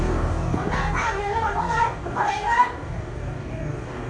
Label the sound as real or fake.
fake